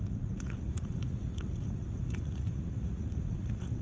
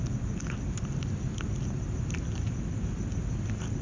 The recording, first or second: second